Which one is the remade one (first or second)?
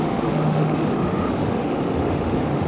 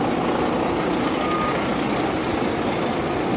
first